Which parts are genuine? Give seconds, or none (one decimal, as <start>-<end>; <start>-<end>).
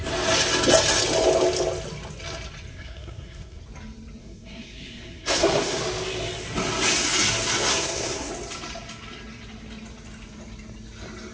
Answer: 0.0-2.7; 3.6-4.2; 5.8-7.7; 8.3-11.3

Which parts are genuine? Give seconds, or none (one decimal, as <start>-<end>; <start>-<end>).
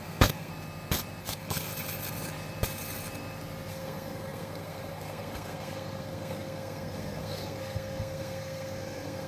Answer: 0.5-1.2; 1.7-3.7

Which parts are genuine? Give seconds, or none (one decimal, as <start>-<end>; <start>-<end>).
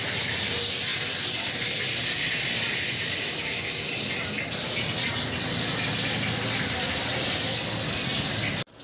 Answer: 0.0-8.8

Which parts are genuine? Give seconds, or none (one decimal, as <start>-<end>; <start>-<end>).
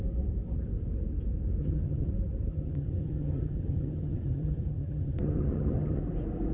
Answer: 0.0-1.6; 2.1-2.5; 6.0-6.5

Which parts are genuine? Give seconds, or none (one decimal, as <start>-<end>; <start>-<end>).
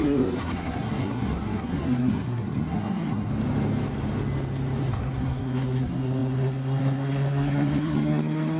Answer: 3.3-4.8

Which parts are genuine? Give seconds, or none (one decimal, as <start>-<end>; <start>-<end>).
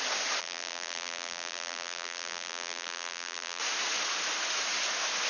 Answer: 0.0-0.4; 3.6-5.3